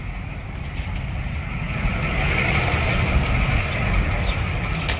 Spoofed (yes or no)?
no